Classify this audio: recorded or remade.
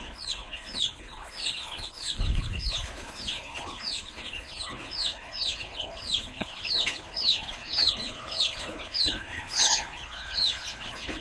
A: remade